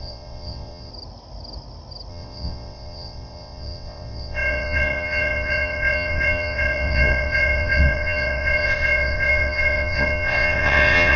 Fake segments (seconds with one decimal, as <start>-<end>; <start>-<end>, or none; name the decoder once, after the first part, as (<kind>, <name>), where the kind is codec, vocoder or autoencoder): 0.0-0.9 (vocoder, WaveNeXt); 2.1-11.2